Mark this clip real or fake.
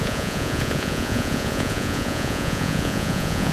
fake